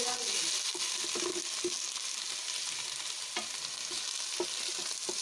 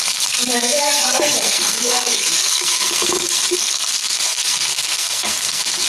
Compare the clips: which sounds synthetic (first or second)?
second